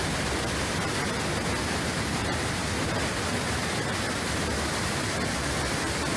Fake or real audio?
real